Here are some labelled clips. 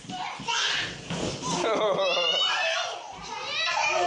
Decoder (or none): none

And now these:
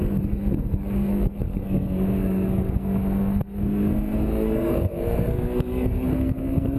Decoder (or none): codec, SNAC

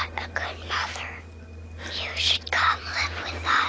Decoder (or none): none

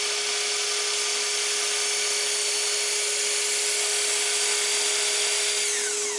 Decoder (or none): none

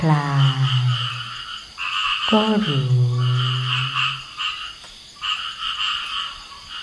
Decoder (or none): none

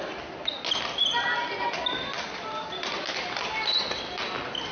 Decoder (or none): none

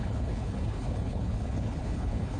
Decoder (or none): codec, HILCodec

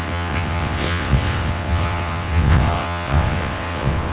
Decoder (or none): vocoder, WaveNeXt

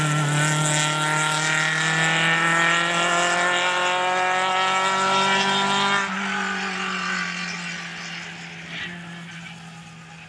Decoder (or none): none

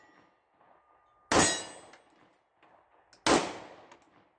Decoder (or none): none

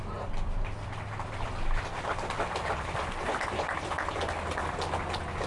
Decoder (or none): none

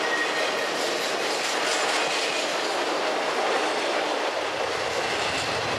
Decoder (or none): none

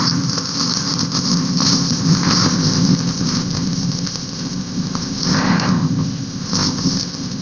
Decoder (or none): codec, ZipCodec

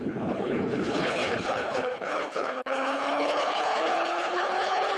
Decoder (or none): codec, HILCodec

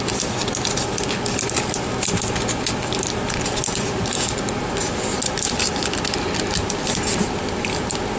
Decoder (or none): none